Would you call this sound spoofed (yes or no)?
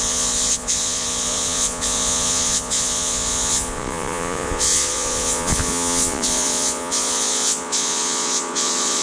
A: yes